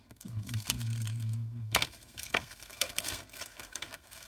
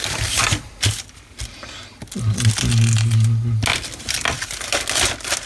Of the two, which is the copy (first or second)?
first